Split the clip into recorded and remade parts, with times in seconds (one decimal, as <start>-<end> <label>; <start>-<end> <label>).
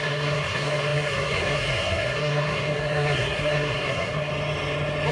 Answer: 0.0-4.3 remade; 4.3-5.1 recorded